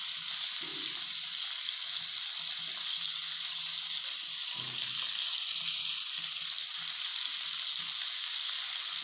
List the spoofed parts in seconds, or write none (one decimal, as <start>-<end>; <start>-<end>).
none